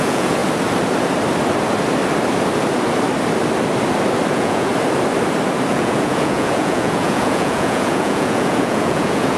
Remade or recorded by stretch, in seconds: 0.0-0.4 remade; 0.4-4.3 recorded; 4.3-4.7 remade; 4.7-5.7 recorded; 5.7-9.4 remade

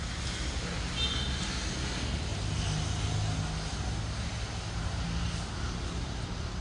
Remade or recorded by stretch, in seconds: 0.0-6.6 recorded

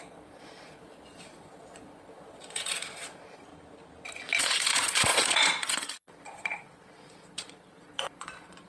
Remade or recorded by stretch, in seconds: 0.0-3.5 remade; 3.5-4.4 recorded; 4.4-8.7 remade